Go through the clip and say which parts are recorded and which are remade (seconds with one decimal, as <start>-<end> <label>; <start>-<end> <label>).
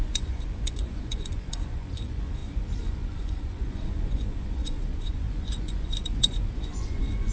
0.0-7.3 remade